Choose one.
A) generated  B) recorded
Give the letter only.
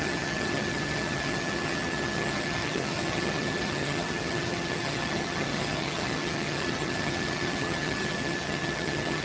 A